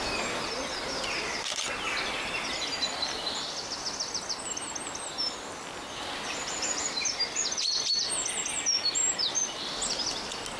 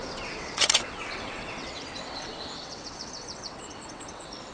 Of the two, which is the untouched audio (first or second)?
first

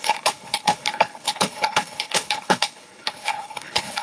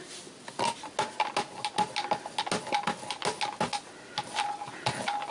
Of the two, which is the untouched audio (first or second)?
second